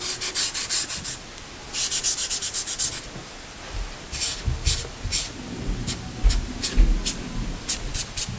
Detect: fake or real real